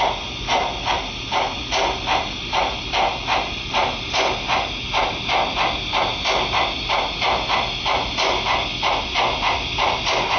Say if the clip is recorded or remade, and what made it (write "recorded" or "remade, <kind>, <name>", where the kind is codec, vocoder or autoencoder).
recorded